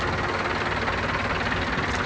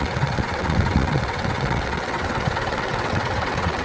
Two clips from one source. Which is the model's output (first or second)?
second